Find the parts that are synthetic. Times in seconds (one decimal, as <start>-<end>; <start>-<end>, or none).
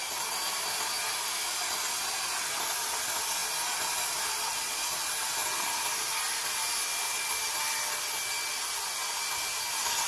none